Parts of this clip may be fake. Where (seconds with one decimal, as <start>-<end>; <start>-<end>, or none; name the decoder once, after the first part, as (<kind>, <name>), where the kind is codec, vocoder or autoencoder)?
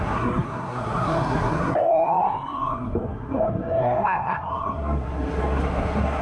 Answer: 0.0-6.2 (codec, SNAC)